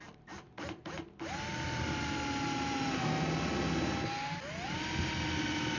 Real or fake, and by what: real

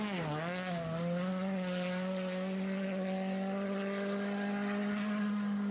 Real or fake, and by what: real